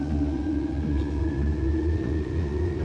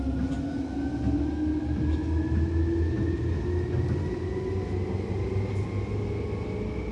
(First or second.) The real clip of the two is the second